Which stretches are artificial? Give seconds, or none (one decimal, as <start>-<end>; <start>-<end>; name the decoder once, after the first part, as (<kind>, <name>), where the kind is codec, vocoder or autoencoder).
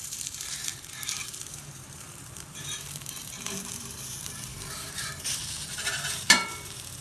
0.0-7.0 (vocoder, BigVGAN v2)